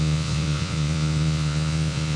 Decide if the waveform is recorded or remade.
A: remade